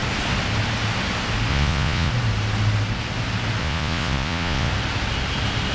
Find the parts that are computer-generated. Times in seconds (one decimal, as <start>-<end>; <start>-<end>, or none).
1.5-2.1; 3.6-4.7